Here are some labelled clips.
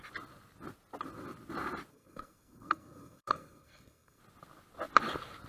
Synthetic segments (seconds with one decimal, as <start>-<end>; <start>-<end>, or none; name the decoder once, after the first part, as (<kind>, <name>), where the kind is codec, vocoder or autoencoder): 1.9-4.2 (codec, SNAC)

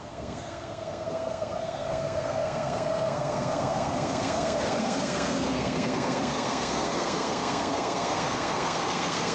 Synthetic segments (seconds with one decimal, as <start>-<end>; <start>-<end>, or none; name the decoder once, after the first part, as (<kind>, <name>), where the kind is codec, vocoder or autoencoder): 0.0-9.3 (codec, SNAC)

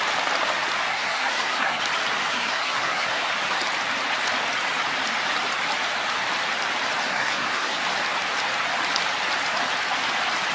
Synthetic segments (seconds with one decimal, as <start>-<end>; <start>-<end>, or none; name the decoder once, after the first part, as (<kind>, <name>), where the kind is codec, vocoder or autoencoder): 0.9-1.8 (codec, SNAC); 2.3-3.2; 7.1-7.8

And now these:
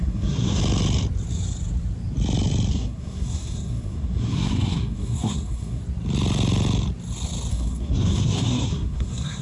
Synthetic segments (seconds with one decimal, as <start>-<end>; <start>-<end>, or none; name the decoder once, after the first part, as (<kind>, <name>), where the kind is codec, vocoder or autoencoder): 0.0-0.6 (codec, SNAC); 2.7-5.8; 7.5-9.4